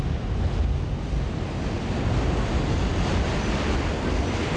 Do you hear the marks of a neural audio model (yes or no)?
no